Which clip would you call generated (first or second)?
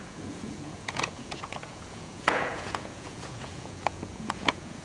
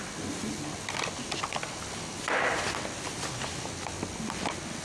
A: first